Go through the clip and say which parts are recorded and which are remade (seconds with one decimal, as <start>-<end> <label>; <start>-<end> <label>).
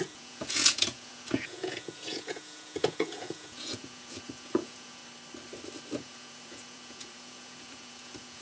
0.0-5.0 remade; 5.0-6.0 recorded; 6.0-8.4 remade